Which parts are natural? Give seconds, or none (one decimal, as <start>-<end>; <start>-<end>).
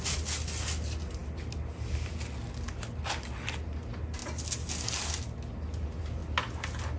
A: 0.0-7.0